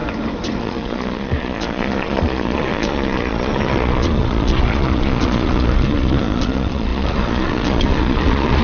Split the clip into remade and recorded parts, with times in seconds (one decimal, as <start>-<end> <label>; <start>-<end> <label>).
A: 0.0-0.6 recorded; 0.6-8.6 remade